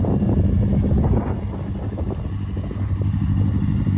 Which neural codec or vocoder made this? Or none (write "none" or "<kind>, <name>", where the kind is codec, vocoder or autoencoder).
none